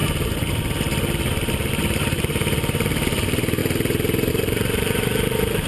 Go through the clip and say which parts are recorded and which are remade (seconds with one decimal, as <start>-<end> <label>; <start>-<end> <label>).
0.0-1.7 recorded; 1.7-3.6 remade; 3.6-4.3 recorded; 4.3-5.7 remade